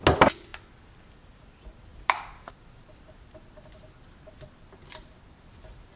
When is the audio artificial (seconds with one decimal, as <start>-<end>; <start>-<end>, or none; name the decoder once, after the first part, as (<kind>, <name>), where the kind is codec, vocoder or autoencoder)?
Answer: 1.9-4.8 (vocoder, BigVGAN v2)

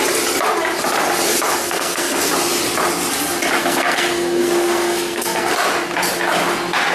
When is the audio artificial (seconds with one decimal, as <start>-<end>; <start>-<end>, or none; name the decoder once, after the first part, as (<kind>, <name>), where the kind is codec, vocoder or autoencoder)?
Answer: 1.6-2.3 (codec, SNAC); 3.6-5.5

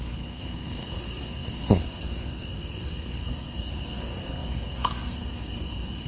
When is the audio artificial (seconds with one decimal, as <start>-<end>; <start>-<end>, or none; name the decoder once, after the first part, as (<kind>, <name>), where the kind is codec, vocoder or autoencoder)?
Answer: 0.0-6.1 (codec, SNAC)

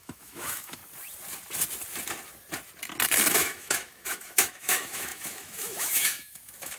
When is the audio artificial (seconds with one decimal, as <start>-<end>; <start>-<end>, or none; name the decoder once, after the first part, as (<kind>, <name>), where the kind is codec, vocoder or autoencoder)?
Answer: 0.0-0.8 (autoencoder, DAC-VAE); 3.3-6.8

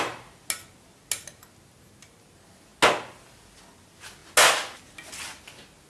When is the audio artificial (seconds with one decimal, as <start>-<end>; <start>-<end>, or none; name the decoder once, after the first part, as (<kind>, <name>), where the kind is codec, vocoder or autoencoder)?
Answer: none

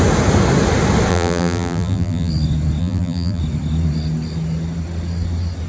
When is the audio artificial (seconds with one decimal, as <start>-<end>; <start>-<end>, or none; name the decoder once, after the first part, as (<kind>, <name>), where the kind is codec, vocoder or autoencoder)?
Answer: 1.1-2.3 (vocoder, BigVGAN v2); 2.8-3.4